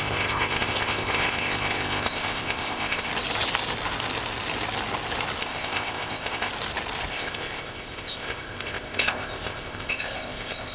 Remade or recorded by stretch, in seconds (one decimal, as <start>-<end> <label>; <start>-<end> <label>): 0.0-3.1 remade; 3.1-5.4 recorded; 5.4-6.5 remade; 6.5-7.1 recorded; 7.1-10.7 remade